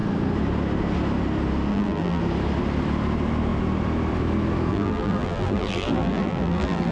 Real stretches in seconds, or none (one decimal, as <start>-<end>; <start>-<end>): 0.0-1.7; 2.2-4.7